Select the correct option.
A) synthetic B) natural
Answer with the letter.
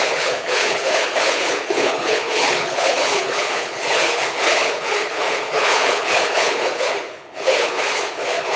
A